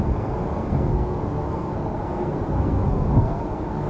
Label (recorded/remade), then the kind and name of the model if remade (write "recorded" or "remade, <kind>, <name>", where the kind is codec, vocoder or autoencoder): remade, codec, SNAC